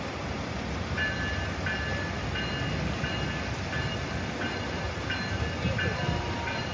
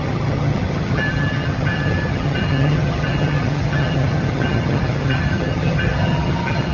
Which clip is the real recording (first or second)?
first